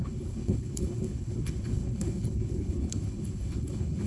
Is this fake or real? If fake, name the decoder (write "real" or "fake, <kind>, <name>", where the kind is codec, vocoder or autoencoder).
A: fake, codec, HILCodec